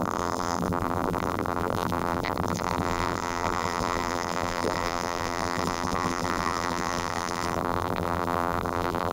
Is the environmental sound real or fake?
fake